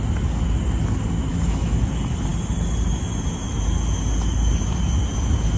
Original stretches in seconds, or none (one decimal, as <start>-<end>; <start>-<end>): 0.0-1.3; 1.9-5.6

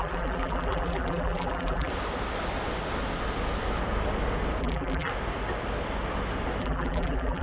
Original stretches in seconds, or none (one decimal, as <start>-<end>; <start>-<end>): 1.9-4.6; 5.1-6.6

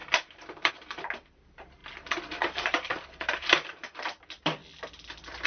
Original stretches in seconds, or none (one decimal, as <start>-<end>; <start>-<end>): 1.8-2.4; 4.6-5.5

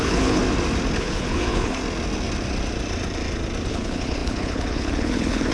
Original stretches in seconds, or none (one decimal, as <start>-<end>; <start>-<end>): 0.4-1.0; 1.8-3.7

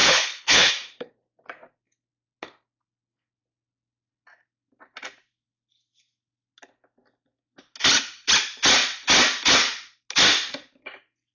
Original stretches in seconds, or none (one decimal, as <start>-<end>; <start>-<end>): 0.7-11.3